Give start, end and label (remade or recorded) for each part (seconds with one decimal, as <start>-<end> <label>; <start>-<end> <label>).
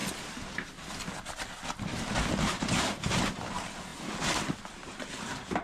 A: 0.0-5.6 recorded